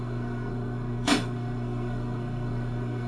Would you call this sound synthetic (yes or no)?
yes